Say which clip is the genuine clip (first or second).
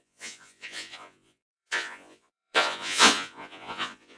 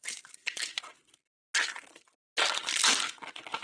second